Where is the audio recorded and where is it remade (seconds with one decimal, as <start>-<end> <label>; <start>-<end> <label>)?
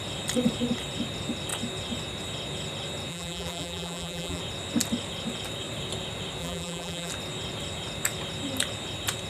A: 0.0-3.1 recorded; 3.1-4.4 remade; 4.4-6.4 recorded; 6.4-7.1 remade; 7.1-9.3 recorded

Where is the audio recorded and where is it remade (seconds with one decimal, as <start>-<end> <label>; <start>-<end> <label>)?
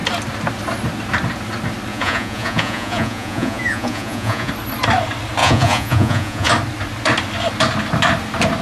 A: 0.0-1.9 recorded; 1.9-4.5 remade; 4.5-5.4 recorded; 5.4-6.5 remade; 6.5-8.6 recorded